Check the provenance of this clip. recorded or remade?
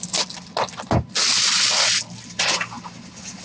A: recorded